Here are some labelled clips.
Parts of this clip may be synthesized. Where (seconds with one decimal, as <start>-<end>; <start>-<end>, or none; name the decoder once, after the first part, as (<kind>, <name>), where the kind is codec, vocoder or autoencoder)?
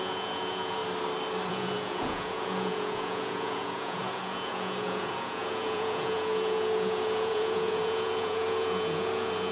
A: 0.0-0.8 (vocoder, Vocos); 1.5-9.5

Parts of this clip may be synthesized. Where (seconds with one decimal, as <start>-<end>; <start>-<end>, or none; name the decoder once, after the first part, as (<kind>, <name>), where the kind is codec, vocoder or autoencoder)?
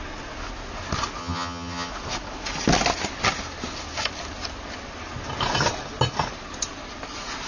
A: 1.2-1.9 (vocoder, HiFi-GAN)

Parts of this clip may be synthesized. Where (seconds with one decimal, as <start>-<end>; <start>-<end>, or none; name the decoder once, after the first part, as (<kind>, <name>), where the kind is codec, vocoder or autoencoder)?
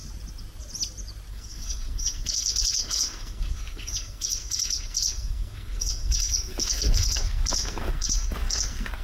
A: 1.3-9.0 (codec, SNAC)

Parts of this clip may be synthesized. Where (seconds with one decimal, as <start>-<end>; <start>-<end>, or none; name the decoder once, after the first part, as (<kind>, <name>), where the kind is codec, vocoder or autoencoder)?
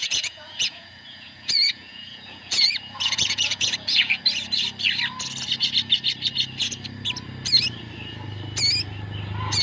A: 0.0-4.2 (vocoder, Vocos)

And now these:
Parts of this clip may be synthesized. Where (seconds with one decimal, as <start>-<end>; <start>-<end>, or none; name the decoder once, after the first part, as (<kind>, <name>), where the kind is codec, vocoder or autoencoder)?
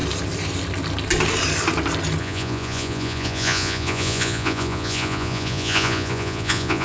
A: 2.2-6.8 (vocoder, Vocos)